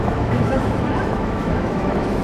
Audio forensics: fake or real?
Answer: fake